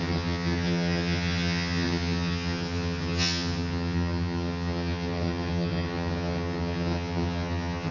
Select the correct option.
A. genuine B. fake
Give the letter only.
B